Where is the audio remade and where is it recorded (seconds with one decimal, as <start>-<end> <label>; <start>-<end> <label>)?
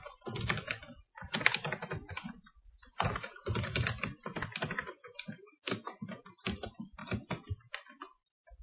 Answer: 0.0-8.6 recorded